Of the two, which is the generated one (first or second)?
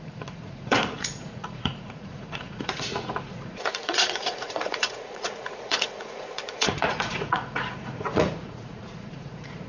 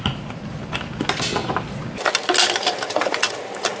first